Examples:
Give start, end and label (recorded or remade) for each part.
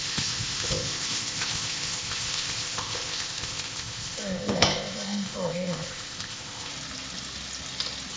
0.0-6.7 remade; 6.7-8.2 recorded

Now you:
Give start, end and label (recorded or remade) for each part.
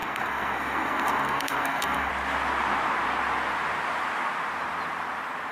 0.0-2.1 remade; 2.1-5.5 recorded